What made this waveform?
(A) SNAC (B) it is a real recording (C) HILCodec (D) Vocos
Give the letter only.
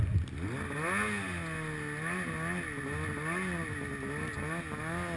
B